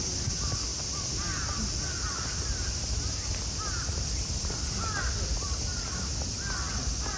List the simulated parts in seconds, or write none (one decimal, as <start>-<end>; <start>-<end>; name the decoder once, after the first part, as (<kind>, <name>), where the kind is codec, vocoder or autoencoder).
none